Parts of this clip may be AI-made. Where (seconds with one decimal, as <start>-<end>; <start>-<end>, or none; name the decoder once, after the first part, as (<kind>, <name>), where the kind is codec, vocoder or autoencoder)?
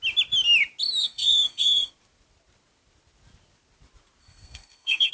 1.0-1.9 (codec, SNAC); 4.2-5.1